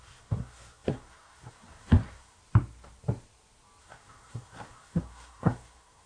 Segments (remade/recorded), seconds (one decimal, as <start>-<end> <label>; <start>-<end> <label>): 0.0-2.4 remade; 2.4-3.8 recorded; 3.8-6.1 remade